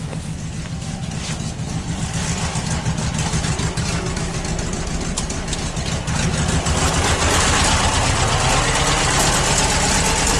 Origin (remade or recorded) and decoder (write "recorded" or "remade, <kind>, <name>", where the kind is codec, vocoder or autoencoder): recorded